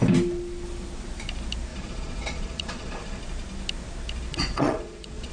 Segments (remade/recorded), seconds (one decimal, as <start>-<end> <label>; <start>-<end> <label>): 0.0-1.7 recorded; 1.7-3.2 remade; 3.2-4.3 recorded; 4.3-5.3 remade